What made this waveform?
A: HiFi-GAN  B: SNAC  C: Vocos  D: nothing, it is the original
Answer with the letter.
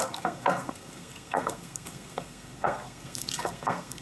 B